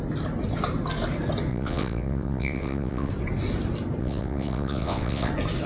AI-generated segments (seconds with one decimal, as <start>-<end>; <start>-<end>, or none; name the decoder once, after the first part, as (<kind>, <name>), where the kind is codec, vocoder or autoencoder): 1.5-3.1 (vocoder, WaveNeXt); 4.0-5.3